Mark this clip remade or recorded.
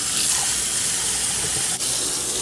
recorded